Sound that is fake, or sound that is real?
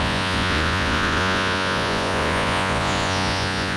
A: fake